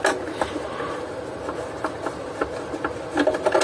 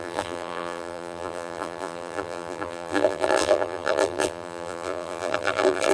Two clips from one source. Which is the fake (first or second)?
second